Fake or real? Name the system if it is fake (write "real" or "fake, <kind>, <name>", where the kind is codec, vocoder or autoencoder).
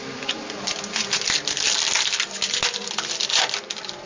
real